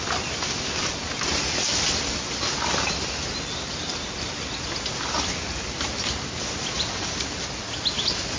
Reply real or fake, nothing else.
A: real